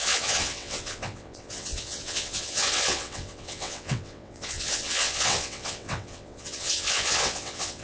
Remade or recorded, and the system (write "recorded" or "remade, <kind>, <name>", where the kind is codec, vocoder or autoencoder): remade, vocoder, WaveNeXt